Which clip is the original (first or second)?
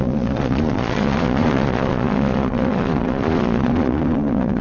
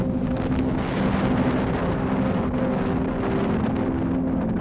second